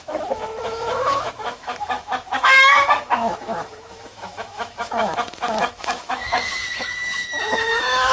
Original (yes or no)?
no